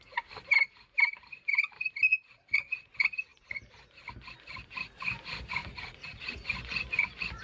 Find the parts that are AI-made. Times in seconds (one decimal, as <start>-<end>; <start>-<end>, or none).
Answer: 2.1-2.9; 5.6-6.2